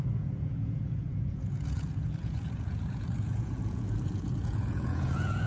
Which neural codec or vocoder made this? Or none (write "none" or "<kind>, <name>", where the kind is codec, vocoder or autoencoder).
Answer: vocoder, Vocos